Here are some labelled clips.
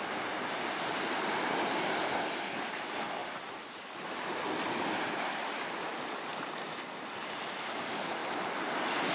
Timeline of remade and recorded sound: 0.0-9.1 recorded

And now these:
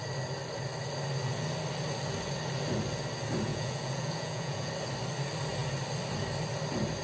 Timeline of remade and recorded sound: 0.0-3.5 recorded; 3.5-4.7 remade; 4.7-7.0 recorded

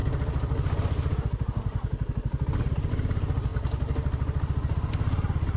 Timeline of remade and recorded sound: 0.0-5.6 recorded

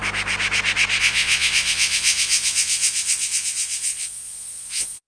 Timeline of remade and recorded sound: 0.0-1.0 recorded; 1.0-5.1 remade

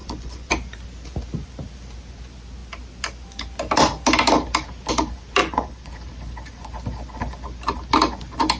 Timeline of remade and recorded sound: 0.0-0.5 remade; 0.5-5.4 recorded; 5.4-5.9 remade; 5.9-8.6 recorded

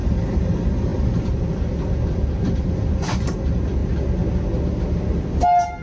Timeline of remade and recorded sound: 0.0-5.8 recorded

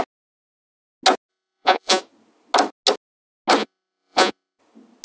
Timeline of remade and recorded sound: 0.0-1.3 recorded; 1.3-2.0 remade; 2.0-3.6 recorded; 3.6-4.6 remade; 4.6-5.0 recorded